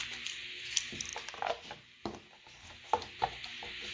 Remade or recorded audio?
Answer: recorded